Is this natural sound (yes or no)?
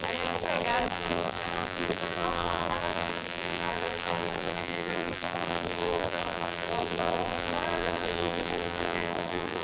no